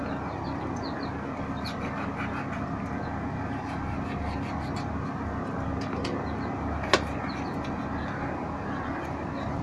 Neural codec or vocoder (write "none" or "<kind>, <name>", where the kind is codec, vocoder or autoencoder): none